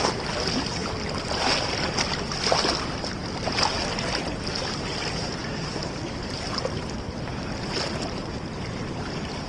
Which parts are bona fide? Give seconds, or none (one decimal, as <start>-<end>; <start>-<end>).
0.0-5.4; 7.7-9.5